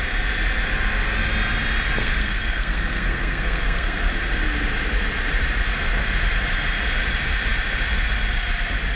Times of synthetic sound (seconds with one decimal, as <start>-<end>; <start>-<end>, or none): 2.0-4.1